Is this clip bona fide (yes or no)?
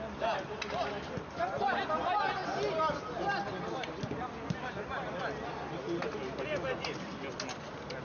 yes